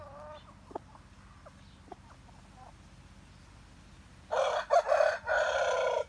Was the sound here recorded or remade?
recorded